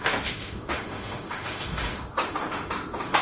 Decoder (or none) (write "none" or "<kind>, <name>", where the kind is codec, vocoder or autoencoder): autoencoder, DAC-VAE